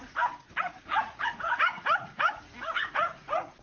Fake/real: fake